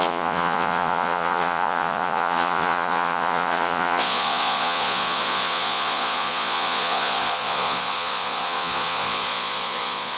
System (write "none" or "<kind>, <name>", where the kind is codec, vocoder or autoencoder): vocoder, Vocos